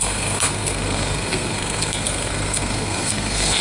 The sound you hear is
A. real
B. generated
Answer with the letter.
B